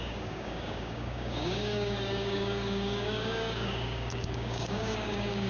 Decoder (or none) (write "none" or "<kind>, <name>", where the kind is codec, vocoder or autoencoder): codec, DAC